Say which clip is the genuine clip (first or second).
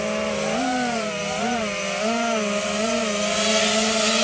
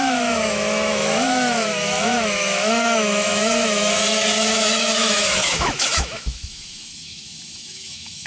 first